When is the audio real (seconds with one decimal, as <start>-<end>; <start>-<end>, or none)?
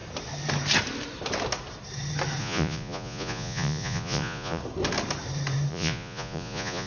0.0-2.4; 4.6-5.7